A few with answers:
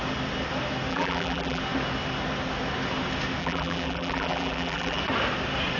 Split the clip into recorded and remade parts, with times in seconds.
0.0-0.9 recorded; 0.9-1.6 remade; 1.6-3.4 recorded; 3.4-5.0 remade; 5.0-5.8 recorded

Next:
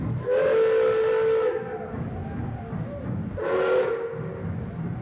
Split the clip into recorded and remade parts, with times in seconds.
0.0-5.0 recorded

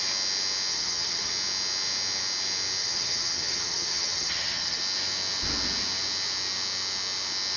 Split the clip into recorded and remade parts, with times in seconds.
0.0-0.7 recorded; 0.7-1.3 remade; 1.3-2.8 recorded; 2.8-4.8 remade; 4.8-7.6 recorded

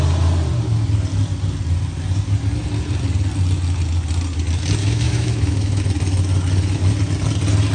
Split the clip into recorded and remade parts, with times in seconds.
0.0-4.8 recorded; 4.8-5.8 remade; 5.8-7.7 recorded

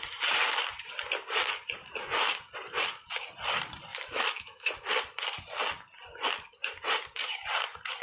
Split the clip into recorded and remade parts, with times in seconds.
0.0-3.9 recorded; 3.9-4.9 remade; 4.9-8.0 recorded